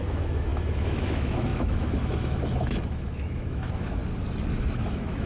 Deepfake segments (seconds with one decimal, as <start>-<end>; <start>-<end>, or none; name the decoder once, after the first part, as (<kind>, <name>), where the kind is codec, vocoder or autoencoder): 0.0-4.0 (autoencoder, DAC-VAE); 4.8-5.3